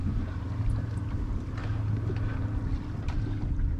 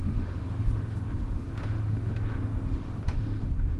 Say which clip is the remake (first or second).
second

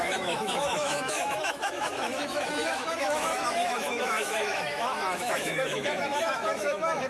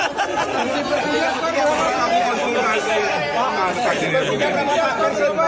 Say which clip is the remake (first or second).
first